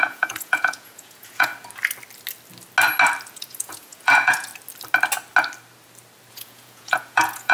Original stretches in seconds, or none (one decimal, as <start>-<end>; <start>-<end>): 1.5-3.3; 4.5-6.3